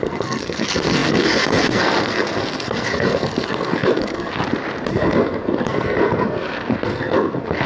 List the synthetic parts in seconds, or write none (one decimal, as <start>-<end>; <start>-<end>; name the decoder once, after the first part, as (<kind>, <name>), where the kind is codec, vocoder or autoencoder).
0.0-4.4 (codec, SNAC); 4.9-7.7